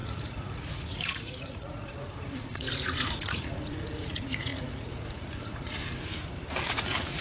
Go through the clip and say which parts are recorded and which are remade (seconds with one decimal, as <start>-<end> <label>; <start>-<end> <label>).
0.0-5.8 remade; 5.8-6.5 recorded; 6.5-7.2 remade